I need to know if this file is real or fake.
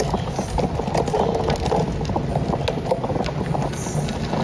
real